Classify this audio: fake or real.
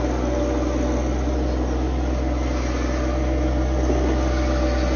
real